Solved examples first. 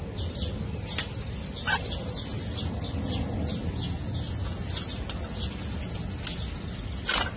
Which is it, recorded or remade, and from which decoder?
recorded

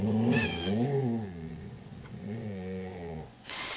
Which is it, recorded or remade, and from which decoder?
remade, vocoder, Vocos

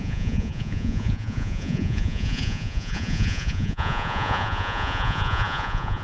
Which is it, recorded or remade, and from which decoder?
remade, vocoder, Vocos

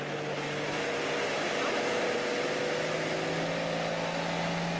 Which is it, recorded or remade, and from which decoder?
recorded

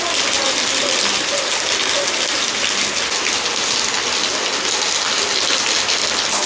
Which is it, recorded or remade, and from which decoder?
recorded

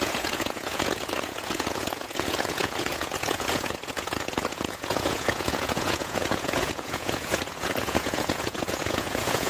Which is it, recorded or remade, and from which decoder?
remade, vocoder, Vocos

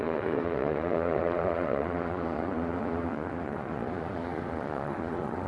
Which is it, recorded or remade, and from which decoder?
remade, vocoder, Vocos